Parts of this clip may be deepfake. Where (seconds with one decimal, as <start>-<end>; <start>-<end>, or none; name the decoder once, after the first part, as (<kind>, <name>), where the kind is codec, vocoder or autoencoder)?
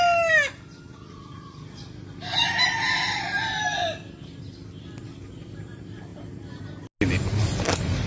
none